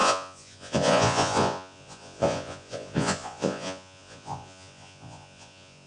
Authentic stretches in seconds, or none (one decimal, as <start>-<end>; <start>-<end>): none